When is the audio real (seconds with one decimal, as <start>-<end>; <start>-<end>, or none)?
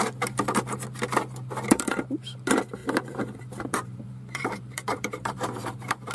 0.0-2.8